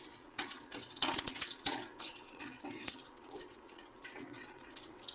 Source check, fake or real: fake